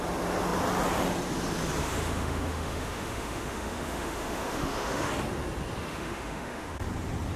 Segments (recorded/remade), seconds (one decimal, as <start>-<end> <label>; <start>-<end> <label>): 0.0-1.8 recorded; 1.8-5.1 remade; 5.1-5.9 recorded; 5.9-6.9 remade; 6.9-7.4 recorded